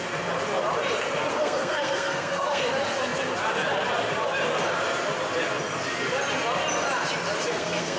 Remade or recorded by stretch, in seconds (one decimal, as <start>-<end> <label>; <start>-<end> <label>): 0.0-1.3 recorded; 1.3-2.6 remade; 2.6-7.5 recorded; 7.5-8.0 remade